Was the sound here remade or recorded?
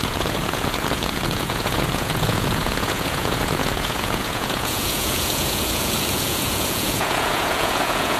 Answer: remade